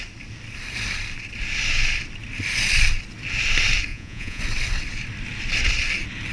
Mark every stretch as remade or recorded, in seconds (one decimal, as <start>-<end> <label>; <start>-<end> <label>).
0.0-3.9 recorded; 3.9-4.4 remade; 4.4-6.3 recorded